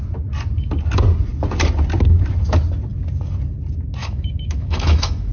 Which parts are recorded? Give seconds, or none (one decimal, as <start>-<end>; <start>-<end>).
0.0-4.0

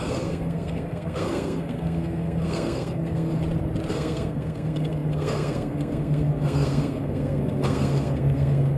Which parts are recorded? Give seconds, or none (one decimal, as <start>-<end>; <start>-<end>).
3.3-3.9

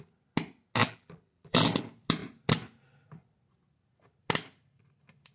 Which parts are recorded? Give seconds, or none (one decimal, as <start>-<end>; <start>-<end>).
0.0-0.8; 1.8-5.3

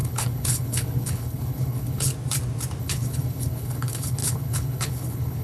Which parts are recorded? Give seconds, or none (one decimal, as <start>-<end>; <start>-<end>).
2.1-2.8

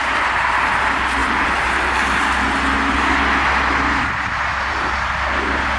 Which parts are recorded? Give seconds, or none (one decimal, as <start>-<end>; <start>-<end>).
0.0-5.8

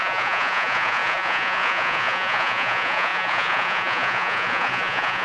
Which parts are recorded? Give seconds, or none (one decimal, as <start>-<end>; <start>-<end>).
none

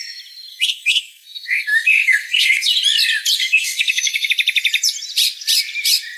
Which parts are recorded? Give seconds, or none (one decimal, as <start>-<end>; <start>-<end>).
0.0-0.5; 2.7-3.4; 4.3-6.2

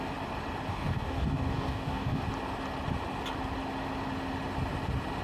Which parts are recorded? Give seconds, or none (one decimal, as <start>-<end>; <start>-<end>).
0.0-0.7; 2.2-5.2